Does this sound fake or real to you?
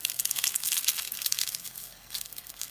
fake